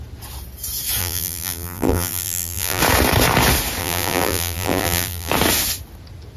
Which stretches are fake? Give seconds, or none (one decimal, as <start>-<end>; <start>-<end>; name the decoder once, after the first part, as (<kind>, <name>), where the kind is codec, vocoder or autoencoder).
1.0-2.8 (vocoder, BigVGAN v2); 3.8-5.3